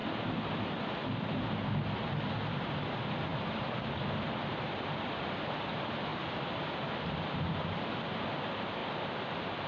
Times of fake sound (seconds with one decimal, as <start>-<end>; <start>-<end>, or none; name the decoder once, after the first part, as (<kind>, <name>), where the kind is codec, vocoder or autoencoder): 6.1-7.4 (vocoder, BigVGAN v2); 8.8-9.7